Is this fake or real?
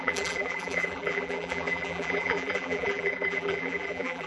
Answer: fake